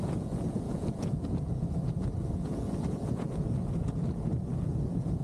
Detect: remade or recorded remade